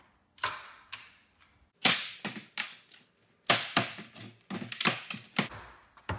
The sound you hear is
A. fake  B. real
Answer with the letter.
B